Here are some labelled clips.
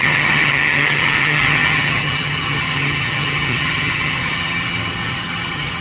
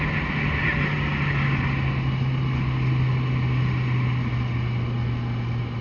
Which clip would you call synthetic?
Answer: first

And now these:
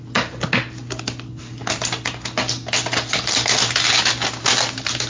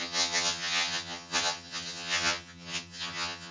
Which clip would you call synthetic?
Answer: second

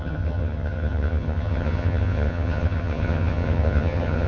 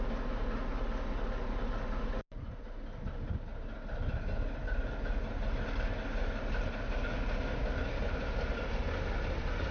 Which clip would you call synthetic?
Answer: first